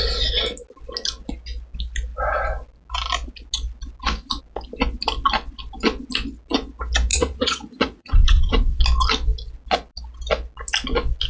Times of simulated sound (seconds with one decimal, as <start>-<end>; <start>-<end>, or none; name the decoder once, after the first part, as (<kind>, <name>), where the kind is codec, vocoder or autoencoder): 7.1-8.8 (vocoder, Vocos)